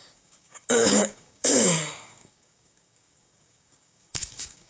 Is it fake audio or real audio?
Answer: fake